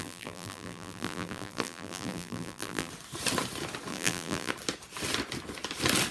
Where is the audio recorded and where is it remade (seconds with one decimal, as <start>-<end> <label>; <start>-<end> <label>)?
0.0-2.9 remade; 2.9-3.9 recorded; 3.9-4.5 remade; 4.5-6.1 recorded